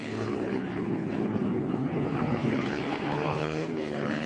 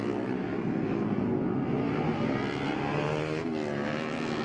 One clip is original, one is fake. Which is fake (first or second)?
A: first